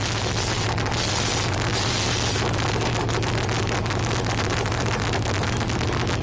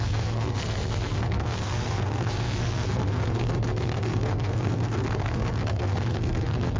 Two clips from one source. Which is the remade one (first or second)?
second